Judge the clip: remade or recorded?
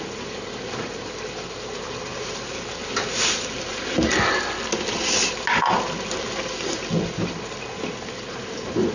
recorded